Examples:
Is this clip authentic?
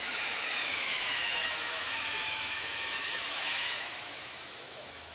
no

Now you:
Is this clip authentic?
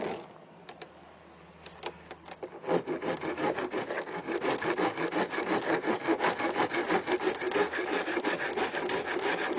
yes